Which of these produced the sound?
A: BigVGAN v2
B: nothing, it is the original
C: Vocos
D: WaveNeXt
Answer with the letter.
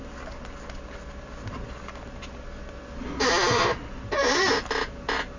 B